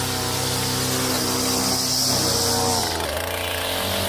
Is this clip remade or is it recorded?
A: recorded